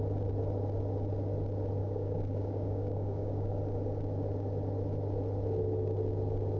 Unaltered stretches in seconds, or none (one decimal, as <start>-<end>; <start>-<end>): 0.0-1.8; 3.6-6.6